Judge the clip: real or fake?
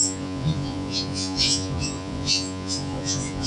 fake